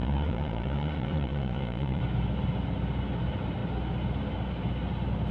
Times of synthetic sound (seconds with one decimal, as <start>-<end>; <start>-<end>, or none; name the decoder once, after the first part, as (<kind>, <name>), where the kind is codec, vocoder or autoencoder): 0.0-2.0 (vocoder, Vocos)